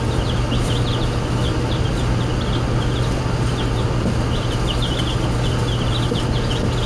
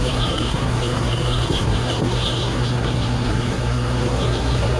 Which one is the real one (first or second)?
first